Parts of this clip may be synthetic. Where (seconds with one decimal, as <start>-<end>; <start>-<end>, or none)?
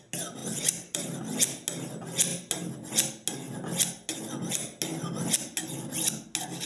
0.4-1.2